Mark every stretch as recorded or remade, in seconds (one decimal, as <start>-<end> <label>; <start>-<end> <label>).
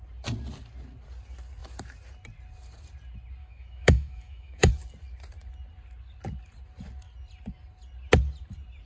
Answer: 0.0-3.4 recorded; 3.4-4.7 remade; 4.7-8.9 recorded